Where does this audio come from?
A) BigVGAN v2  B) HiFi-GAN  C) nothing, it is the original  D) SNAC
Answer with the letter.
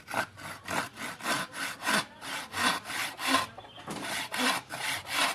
C